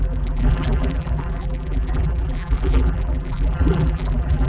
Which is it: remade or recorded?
remade